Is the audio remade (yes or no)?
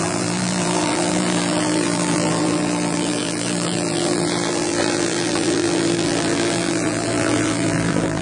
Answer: yes